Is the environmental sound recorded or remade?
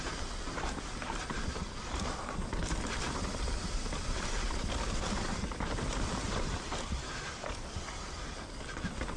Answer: recorded